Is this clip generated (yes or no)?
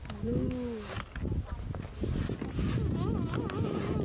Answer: no